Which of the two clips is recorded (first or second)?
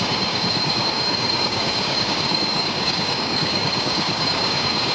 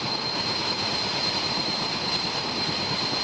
second